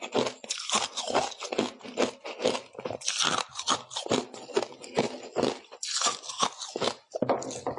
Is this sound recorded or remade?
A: recorded